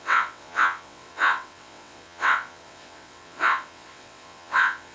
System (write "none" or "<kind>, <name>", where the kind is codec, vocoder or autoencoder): vocoder, WaveNeXt